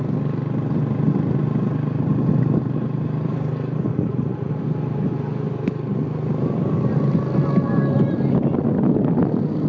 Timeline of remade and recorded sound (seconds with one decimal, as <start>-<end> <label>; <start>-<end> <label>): 0.0-3.9 recorded; 3.9-4.5 remade; 4.5-9.7 recorded